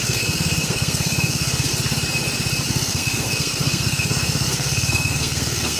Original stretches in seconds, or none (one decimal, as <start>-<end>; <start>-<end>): 1.7-2.7